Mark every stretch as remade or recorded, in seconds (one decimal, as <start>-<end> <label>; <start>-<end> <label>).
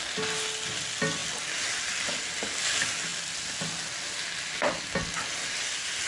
0.0-6.1 recorded